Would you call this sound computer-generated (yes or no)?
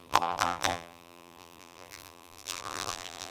yes